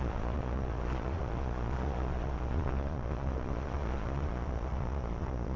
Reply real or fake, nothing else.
fake